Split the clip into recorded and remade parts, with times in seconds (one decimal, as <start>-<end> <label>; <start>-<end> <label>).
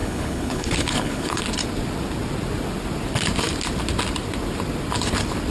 0.0-1.4 remade; 1.4-5.5 recorded